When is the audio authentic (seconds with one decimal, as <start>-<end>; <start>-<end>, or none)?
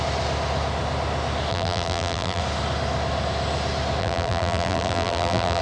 0.0-1.5; 2.4-4.0